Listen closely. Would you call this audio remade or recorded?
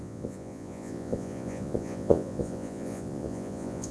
remade